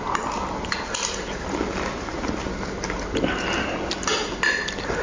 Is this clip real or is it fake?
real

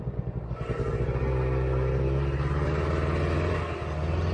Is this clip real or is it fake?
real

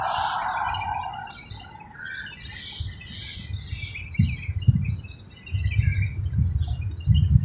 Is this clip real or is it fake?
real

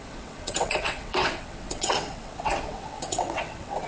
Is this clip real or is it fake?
fake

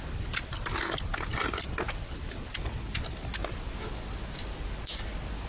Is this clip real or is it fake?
real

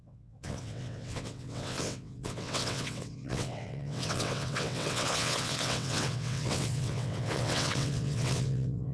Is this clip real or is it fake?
fake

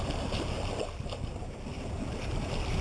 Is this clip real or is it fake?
real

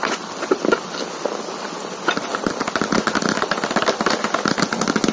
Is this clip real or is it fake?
real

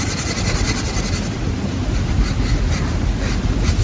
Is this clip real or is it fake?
real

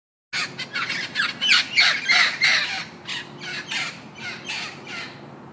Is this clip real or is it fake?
real